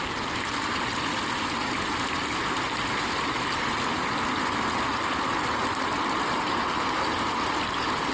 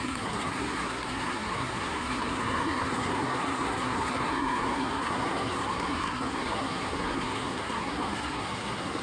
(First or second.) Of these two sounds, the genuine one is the first